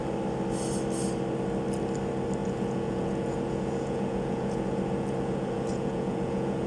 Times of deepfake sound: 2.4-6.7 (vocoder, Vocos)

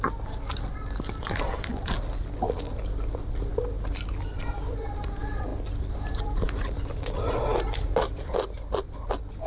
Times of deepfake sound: none

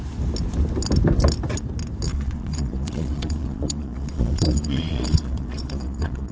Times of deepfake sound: 2.1-6.3 (vocoder, Vocos)

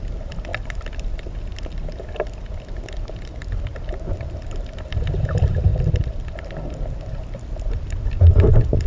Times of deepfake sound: none

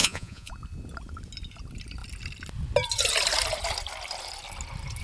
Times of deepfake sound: 0.0-0.5 (vocoder, Vocos)

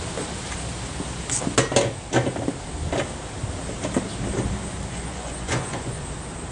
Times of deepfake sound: 4.9-6.0 (vocoder, Vocos)